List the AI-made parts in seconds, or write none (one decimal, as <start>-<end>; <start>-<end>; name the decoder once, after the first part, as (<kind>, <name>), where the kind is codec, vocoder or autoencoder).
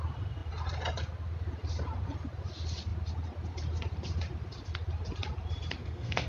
5.8-6.3 (codec, SNAC)